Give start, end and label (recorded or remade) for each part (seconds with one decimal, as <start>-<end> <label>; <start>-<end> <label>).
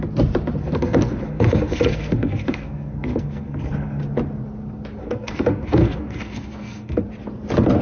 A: 0.0-0.6 recorded; 0.6-4.0 remade; 4.0-5.0 recorded; 5.0-7.0 remade; 7.0-7.8 recorded